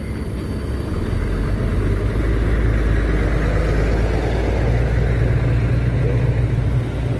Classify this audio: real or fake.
real